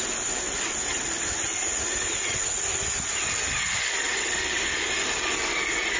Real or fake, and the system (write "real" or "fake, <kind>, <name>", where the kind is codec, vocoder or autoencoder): real